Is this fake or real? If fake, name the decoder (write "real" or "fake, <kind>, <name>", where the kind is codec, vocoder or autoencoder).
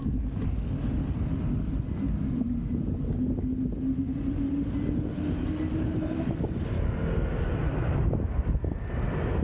real